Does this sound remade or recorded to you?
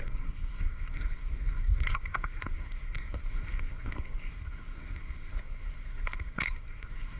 remade